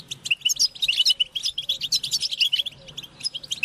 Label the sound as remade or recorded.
recorded